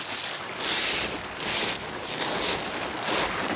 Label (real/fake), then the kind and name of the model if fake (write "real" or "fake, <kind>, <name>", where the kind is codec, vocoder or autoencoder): real